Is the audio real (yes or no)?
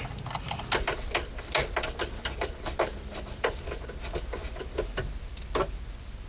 yes